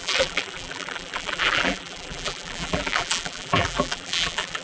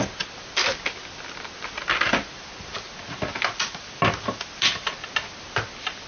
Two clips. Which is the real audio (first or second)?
second